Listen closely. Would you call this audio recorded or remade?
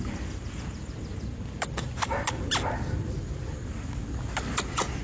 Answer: recorded